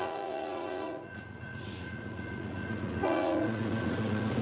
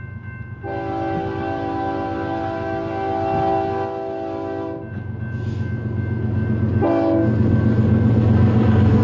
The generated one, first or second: first